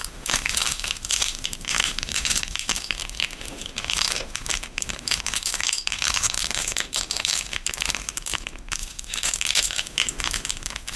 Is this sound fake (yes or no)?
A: yes